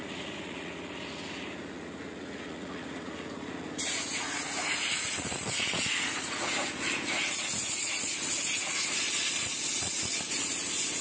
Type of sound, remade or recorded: remade